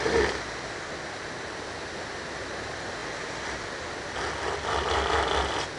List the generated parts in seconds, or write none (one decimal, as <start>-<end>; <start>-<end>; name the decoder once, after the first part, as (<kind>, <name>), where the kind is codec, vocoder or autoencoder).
none